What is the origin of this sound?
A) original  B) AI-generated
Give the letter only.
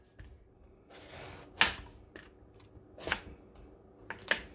A